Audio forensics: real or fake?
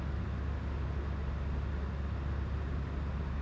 real